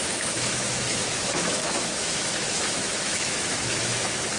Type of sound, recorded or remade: remade